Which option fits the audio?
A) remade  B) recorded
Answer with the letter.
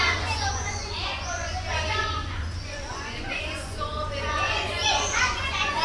A